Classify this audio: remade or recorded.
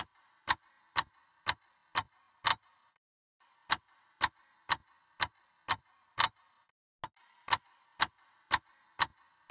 recorded